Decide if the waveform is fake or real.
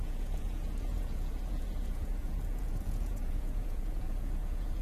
fake